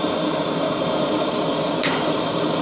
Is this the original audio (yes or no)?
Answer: no